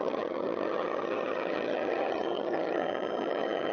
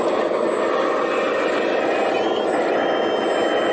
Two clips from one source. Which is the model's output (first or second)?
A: first